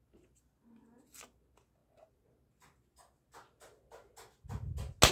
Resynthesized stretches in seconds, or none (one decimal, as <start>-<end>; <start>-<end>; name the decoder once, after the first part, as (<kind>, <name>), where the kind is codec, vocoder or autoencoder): none